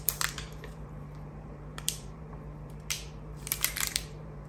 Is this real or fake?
fake